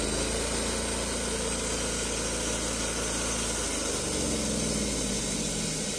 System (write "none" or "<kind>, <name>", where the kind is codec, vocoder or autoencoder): none